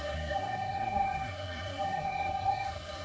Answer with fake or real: fake